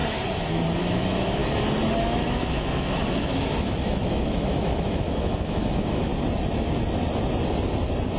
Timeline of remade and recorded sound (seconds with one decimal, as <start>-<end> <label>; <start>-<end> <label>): 0.0-0.8 recorded; 0.8-1.4 remade; 1.4-2.0 recorded; 2.0-6.1 remade; 6.1-8.2 recorded